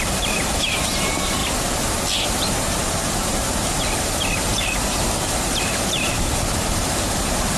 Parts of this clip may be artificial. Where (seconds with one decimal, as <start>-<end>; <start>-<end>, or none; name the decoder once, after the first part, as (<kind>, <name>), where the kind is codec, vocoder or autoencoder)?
0.0-1.4 (vocoder, BigVGAN v2); 2.3-7.6